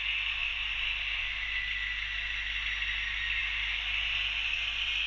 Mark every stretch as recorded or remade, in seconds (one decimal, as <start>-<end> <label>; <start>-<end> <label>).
0.0-5.1 recorded